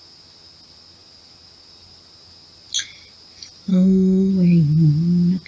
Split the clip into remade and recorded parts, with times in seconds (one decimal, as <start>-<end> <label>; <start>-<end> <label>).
0.0-3.7 recorded; 3.7-4.3 remade; 4.3-5.5 recorded